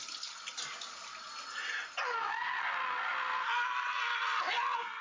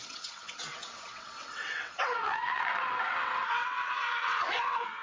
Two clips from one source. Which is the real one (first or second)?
first